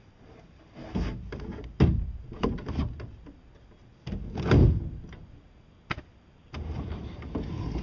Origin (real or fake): real